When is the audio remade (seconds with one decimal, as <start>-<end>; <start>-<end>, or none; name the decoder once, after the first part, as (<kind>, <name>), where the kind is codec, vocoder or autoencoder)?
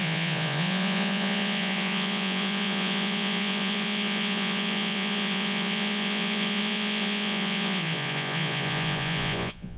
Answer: 0.0-9.8 (vocoder, Vocos)